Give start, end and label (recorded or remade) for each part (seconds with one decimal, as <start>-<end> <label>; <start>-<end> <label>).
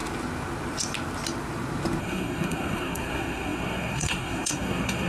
0.0-2.0 recorded; 2.0-5.1 remade